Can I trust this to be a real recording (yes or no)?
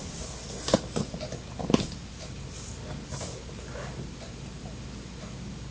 yes